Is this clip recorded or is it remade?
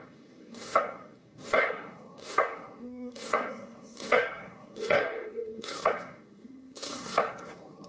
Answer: remade